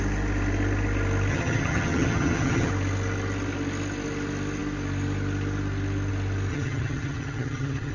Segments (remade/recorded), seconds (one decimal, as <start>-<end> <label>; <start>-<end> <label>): 0.0-1.3 recorded; 1.3-2.7 remade; 2.7-6.5 recorded; 6.5-7.9 remade